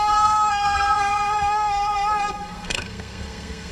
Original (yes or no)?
no